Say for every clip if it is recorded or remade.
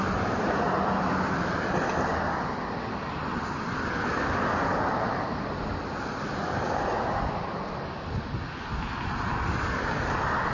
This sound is recorded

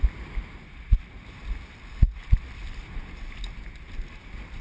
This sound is recorded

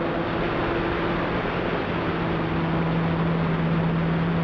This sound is recorded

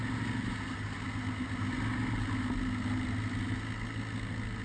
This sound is recorded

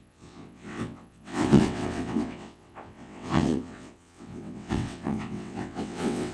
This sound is remade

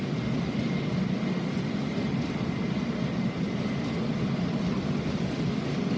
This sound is recorded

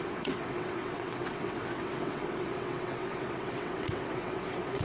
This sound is remade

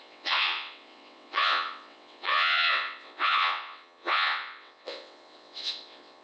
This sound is remade